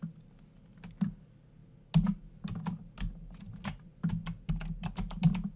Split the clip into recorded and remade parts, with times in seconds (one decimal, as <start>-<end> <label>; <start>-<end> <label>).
0.0-5.6 recorded